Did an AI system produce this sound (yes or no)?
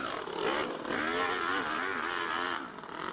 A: no